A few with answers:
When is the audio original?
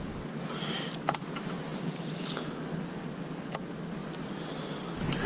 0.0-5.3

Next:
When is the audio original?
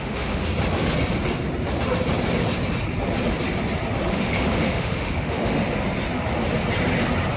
0.5-4.1; 5.6-7.4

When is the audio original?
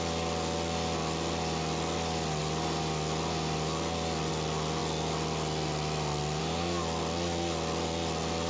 0.0-8.5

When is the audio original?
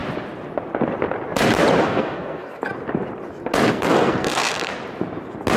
0.0-1.8; 2.7-3.7; 4.7-5.6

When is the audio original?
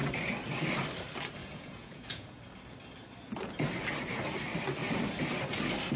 0.0-1.4; 2.4-6.0